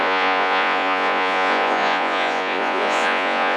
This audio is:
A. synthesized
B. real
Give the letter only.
A